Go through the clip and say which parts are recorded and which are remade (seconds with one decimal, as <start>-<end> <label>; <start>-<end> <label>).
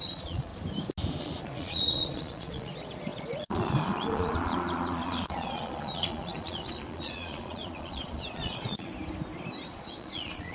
0.0-0.5 remade; 0.5-1.2 recorded; 1.2-8.9 remade; 8.9-9.7 recorded; 9.7-10.5 remade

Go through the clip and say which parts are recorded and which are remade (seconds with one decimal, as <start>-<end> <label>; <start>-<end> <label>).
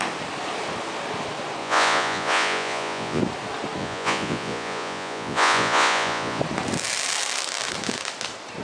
0.0-1.6 recorded; 1.6-3.2 remade; 3.2-3.8 recorded; 3.8-6.4 remade; 6.4-8.6 recorded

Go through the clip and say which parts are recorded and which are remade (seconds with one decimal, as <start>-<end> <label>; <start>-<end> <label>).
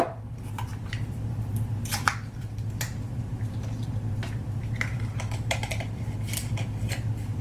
0.0-7.4 remade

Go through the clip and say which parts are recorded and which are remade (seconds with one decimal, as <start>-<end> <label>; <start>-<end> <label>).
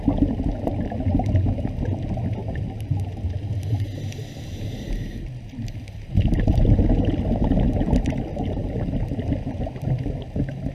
0.0-10.7 recorded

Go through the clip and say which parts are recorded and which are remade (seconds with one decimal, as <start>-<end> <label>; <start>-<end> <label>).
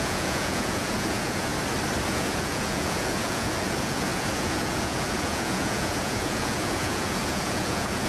0.0-1.5 remade; 1.5-2.1 recorded; 2.1-8.1 remade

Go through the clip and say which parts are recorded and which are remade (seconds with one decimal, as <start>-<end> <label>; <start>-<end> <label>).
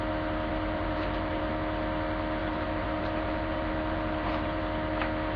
0.0-0.5 recorded; 0.5-1.5 remade; 1.5-2.4 recorded; 2.4-4.6 remade; 4.6-5.4 recorded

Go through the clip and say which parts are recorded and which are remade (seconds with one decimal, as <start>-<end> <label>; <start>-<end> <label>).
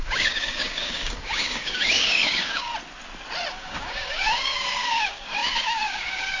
0.0-2.7 remade; 2.7-3.5 recorded; 3.5-6.4 remade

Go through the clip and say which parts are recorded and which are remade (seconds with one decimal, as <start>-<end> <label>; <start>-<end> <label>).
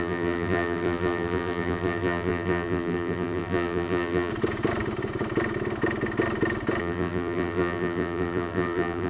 0.0-4.3 remade; 4.3-6.8 recorded; 6.8-9.1 remade